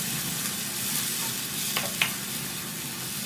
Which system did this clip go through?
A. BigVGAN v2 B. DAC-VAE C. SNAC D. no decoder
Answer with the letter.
D